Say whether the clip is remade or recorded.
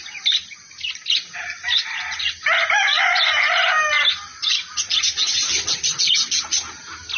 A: recorded